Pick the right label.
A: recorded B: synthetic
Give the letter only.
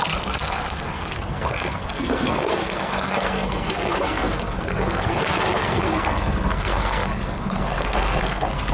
B